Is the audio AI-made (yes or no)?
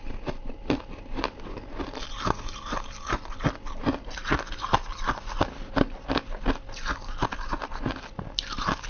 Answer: no